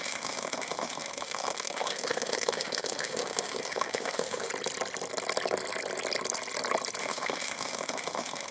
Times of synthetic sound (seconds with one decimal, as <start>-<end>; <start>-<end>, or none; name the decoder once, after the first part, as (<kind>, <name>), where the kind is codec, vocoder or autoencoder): 0.0-4.5 (autoencoder, DAC-VAE); 7.0-8.5

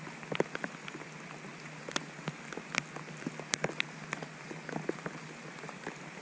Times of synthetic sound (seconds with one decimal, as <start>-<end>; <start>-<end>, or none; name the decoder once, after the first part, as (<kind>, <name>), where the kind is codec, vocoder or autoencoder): none

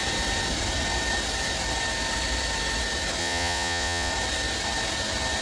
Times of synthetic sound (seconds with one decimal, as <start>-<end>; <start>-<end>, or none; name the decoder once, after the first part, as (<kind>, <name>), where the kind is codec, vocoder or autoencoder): 3.2-4.1 (vocoder, Vocos)

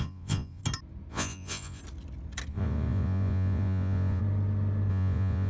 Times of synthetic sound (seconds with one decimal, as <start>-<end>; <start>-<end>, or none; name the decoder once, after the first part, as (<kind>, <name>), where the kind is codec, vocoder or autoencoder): 0.0-0.6 (vocoder, Vocos); 1.1-1.8; 2.5-4.2; 4.9-5.5